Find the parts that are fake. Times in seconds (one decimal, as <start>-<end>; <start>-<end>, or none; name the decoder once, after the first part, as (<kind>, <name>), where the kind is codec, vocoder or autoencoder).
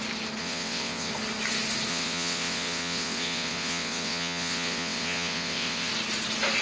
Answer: 0.4-1.1 (vocoder, WaveNeXt); 1.9-5.9